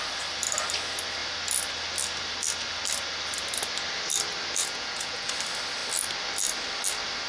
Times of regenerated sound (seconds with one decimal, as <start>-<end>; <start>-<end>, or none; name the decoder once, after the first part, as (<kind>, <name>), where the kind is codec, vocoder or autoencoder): 4.6-5.3 (vocoder, Vocos)